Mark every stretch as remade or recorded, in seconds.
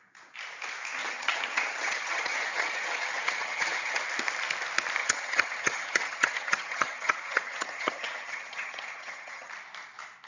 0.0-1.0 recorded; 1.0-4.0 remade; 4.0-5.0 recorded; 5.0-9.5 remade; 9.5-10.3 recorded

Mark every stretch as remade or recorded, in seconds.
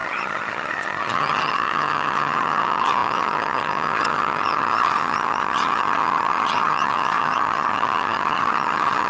0.0-9.1 remade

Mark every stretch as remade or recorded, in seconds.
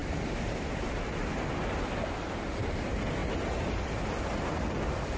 0.0-5.2 recorded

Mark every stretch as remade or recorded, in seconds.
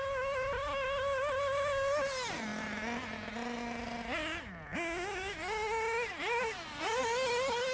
0.0-7.7 recorded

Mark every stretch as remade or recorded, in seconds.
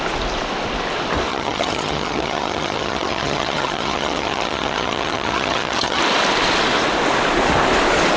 0.0-1.3 recorded; 1.3-6.0 remade; 6.0-8.2 recorded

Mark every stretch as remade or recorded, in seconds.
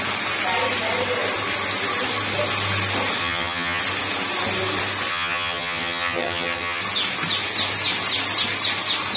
0.0-3.2 recorded; 3.2-3.8 remade; 3.8-5.1 recorded; 5.1-6.8 remade; 6.8-9.2 recorded